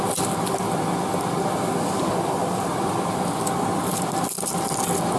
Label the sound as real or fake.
real